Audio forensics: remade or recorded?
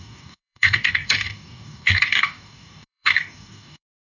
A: remade